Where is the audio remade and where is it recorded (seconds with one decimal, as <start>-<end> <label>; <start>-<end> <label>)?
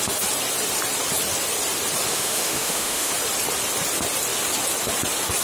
0.0-2.1 recorded; 2.1-3.1 remade; 3.1-5.4 recorded